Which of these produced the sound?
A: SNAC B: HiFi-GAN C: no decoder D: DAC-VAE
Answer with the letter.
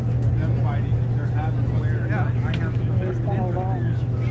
C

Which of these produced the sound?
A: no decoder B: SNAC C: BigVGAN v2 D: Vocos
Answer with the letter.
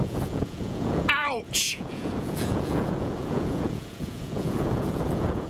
D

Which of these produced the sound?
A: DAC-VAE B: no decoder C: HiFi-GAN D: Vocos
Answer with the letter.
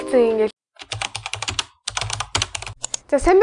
B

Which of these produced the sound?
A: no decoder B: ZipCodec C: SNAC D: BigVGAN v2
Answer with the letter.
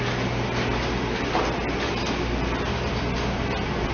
A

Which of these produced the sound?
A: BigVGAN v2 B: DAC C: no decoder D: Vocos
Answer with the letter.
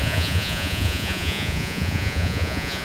D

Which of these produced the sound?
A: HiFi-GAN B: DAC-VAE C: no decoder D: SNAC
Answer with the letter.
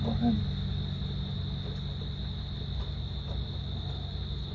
C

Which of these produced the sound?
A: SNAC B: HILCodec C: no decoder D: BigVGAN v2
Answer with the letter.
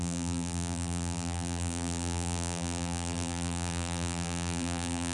D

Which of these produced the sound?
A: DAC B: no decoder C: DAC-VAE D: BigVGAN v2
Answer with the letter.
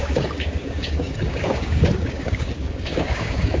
A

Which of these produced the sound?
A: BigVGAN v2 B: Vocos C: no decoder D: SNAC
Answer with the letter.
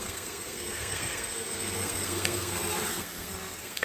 D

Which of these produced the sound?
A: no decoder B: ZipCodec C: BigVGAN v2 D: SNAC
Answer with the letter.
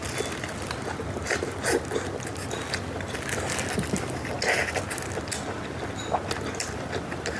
A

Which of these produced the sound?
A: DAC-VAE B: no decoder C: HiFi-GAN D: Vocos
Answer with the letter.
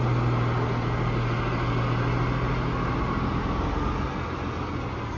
B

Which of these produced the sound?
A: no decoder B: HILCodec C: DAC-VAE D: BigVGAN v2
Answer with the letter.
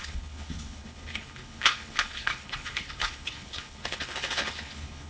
B